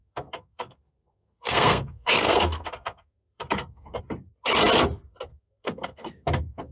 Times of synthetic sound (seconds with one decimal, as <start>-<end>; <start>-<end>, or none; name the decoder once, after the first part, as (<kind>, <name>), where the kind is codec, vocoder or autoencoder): 0.0-4.0 (codec, SNAC); 5.3-6.7